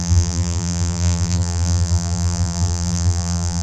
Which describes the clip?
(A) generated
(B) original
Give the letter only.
A